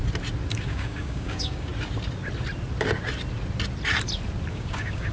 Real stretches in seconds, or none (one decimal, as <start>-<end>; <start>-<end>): 0.0-0.5; 1.7-4.5